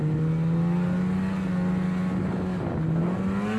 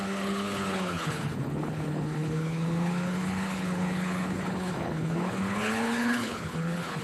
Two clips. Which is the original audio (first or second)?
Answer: first